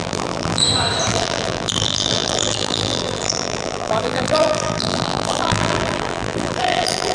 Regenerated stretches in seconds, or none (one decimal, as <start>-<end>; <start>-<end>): 0.0-0.6; 1.1-7.1